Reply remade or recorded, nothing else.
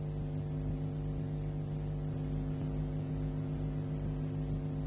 recorded